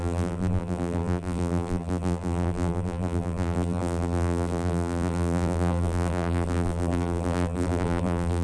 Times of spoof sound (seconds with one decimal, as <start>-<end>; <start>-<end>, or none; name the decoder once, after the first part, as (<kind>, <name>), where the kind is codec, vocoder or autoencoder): 0.0-8.4 (vocoder, BigVGAN v2)